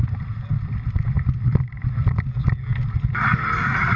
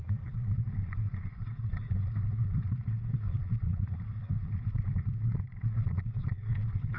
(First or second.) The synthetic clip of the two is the second